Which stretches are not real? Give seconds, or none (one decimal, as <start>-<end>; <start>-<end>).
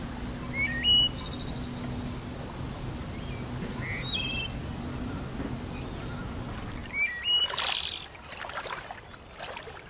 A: none